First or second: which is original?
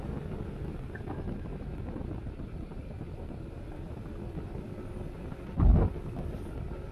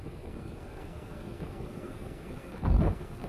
first